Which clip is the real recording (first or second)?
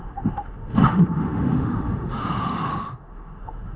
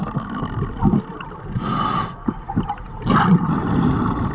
second